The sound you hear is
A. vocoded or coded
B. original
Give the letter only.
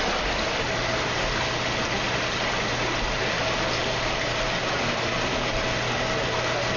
B